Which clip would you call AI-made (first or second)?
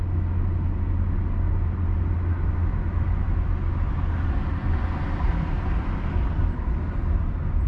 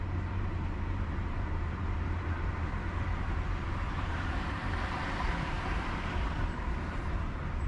second